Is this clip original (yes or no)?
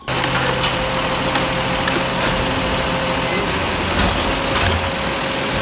yes